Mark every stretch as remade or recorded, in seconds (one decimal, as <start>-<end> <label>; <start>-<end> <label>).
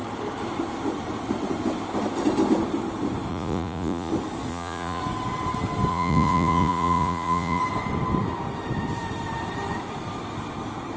0.0-3.3 recorded; 3.3-4.1 remade; 4.1-4.5 recorded; 4.5-5.0 remade; 5.0-5.9 recorded; 5.9-7.6 remade; 7.6-11.0 recorded